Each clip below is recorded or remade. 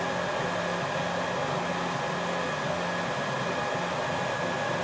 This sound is recorded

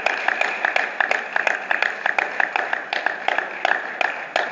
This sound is recorded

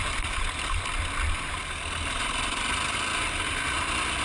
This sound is recorded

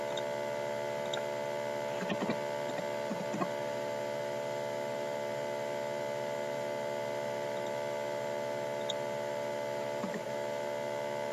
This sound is recorded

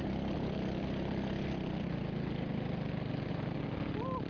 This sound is recorded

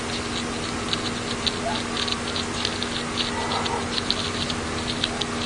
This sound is recorded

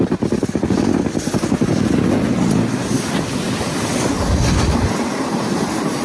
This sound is recorded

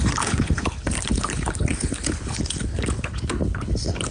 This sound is remade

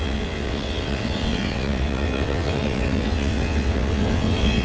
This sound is remade